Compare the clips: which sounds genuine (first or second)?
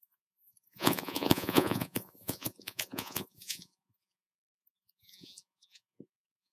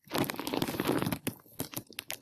second